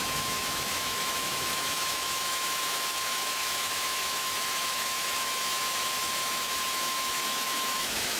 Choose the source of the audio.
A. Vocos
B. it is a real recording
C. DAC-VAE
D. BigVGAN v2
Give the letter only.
C